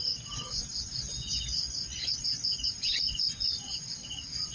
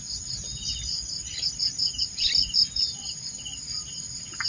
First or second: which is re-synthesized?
first